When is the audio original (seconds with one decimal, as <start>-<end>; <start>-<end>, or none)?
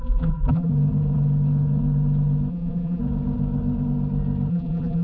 0.7-2.5; 3.0-4.5